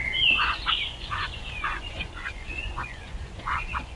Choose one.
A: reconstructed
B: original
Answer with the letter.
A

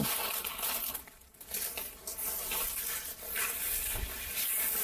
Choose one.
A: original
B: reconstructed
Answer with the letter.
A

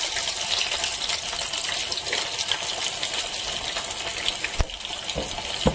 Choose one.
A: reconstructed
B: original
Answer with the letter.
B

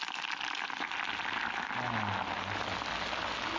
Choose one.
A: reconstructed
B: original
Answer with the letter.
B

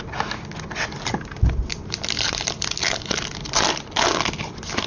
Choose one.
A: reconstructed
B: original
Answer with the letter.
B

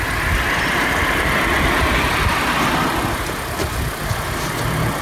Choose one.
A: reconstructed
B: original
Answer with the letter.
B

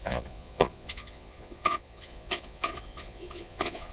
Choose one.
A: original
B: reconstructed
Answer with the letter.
B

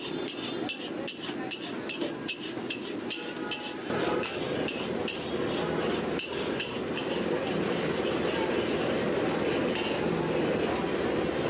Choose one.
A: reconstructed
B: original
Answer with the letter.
B